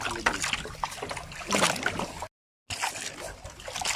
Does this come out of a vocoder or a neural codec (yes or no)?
no